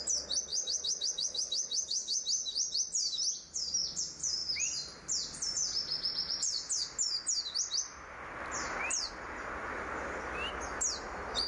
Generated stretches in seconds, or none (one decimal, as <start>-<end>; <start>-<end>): 0.5-2.2